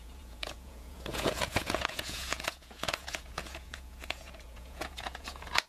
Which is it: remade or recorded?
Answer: remade